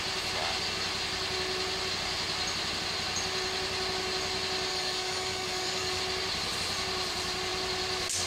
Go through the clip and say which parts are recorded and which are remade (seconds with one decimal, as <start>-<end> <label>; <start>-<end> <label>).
0.0-4.7 recorded; 4.7-6.0 remade; 6.0-8.3 recorded